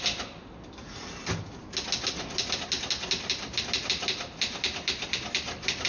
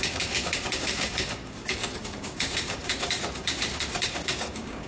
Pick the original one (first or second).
first